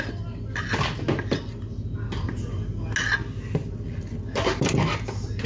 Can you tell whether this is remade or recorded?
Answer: recorded